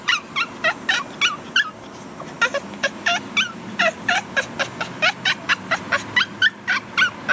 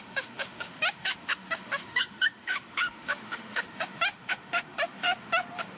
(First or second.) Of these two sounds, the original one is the first